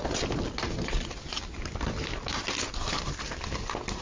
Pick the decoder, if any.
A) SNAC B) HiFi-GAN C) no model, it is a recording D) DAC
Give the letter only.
C